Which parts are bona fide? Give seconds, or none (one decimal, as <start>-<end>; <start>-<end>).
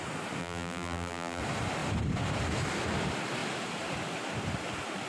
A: 0.0-0.4; 1.4-5.1